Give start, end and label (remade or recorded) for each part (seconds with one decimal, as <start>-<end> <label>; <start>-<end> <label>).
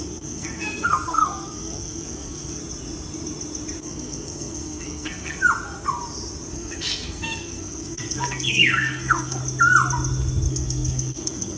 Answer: 0.0-2.6 remade; 2.6-3.8 recorded; 3.8-5.4 remade; 5.4-6.5 recorded; 6.5-9.4 remade; 9.4-10.5 recorded; 10.5-11.6 remade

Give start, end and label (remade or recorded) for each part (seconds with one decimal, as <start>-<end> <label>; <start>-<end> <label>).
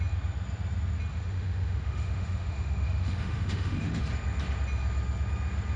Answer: 0.0-1.1 recorded; 1.1-4.0 remade; 4.0-5.8 recorded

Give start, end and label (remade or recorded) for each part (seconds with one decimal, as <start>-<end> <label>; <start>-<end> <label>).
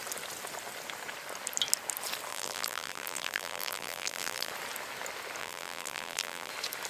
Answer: 0.0-2.3 recorded; 2.3-4.5 remade; 4.5-5.4 recorded; 5.4-6.5 remade; 6.5-6.9 recorded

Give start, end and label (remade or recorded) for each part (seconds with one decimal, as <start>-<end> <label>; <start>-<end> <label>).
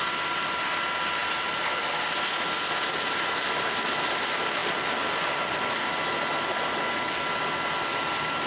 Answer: 0.0-8.5 recorded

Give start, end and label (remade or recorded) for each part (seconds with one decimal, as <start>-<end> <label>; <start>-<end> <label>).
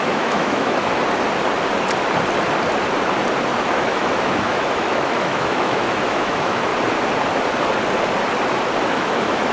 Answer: 0.0-1.0 remade; 1.0-3.7 recorded; 3.7-6.7 remade; 6.7-8.8 recorded; 8.8-9.5 remade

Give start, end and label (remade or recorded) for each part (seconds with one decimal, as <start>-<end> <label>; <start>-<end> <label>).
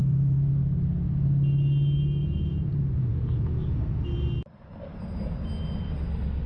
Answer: 0.0-0.6 remade; 0.6-2.2 recorded; 2.2-3.8 remade; 3.8-6.5 recorded